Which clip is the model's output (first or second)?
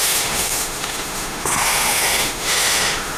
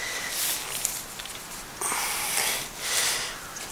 first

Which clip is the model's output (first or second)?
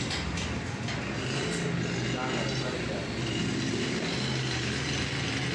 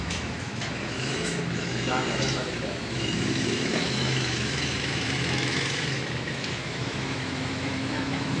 second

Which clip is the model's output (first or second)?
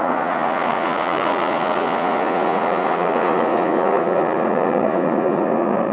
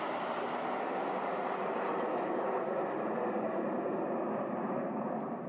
first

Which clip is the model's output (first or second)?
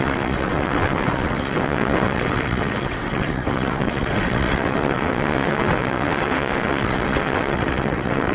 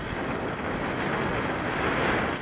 first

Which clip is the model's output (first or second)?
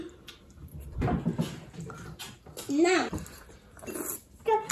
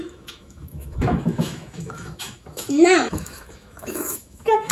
second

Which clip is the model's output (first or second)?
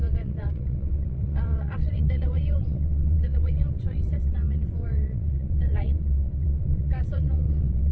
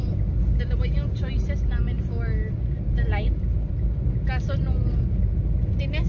first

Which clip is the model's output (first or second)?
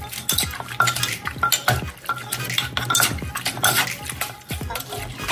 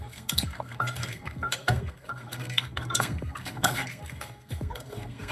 second